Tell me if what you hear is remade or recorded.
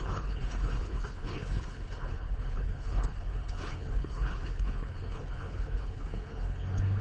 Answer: remade